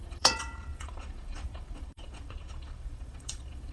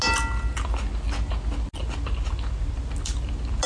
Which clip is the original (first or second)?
second